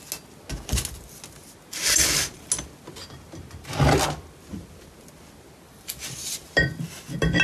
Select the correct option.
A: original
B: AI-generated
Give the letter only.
A